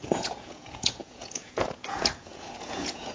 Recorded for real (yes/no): no